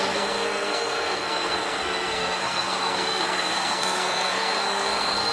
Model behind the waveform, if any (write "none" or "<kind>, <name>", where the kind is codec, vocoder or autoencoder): codec, SNAC